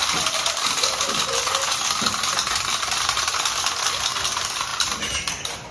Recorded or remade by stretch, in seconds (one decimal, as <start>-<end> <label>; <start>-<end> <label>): 0.0-5.7 recorded